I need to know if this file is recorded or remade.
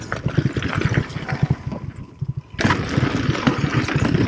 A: recorded